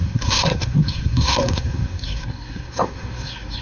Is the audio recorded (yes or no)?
no